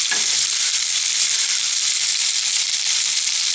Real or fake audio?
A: fake